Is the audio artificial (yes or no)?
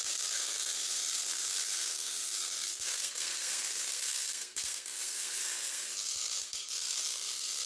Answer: yes